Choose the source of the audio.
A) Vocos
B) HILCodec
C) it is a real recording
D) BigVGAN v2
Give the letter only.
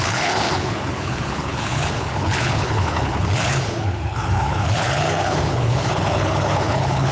B